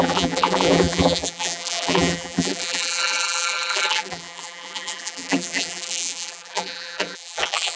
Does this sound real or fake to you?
fake